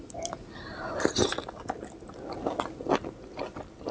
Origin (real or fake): real